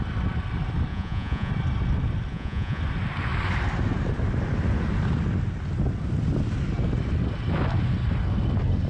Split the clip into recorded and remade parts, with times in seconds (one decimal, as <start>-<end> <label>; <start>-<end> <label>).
0.0-0.9 recorded; 0.9-1.5 remade; 1.5-2.3 recorded; 2.3-2.8 remade; 2.8-8.9 recorded